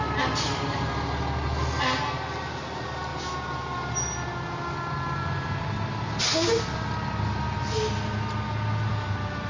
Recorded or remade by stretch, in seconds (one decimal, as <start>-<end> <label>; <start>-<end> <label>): 0.0-9.5 recorded